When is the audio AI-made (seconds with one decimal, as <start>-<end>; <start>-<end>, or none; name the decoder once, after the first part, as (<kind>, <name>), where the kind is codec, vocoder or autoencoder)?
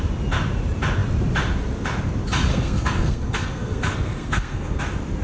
2.5-4.8 (codec, SNAC)